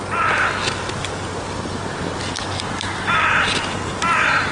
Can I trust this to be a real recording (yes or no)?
yes